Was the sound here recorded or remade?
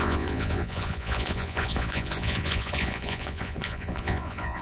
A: remade